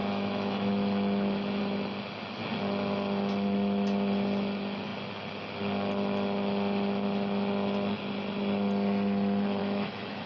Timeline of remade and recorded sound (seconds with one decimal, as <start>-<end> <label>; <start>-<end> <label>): 0.0-1.6 remade; 1.6-9.6 recorded; 9.6-10.3 remade